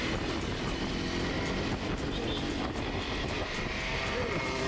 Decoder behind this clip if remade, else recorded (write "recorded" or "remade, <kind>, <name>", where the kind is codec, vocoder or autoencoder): recorded